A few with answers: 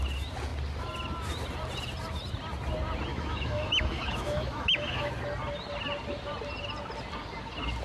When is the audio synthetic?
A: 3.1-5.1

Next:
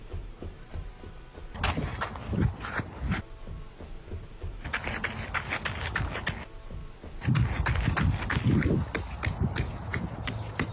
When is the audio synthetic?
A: none

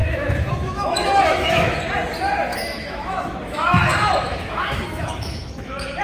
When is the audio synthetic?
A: 0.0-1.8; 2.5-6.0

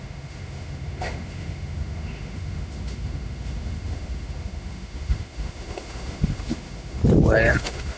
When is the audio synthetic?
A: 0.0-7.0; 7.5-8.0